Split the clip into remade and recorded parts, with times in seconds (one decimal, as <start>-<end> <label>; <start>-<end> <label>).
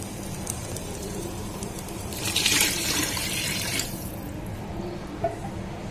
0.0-0.6 recorded; 0.6-4.1 remade; 4.1-5.9 recorded